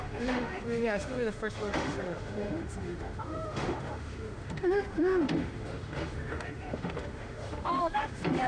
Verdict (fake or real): fake